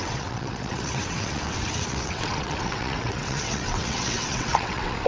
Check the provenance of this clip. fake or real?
fake